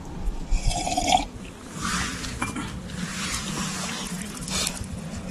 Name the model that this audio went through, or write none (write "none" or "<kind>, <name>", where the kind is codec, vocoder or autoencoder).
none